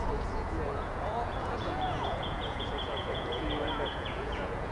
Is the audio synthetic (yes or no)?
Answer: yes